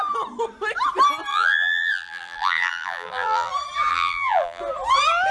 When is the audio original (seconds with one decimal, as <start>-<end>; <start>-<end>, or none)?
0.0-1.3; 3.5-3.9; 4.6-5.3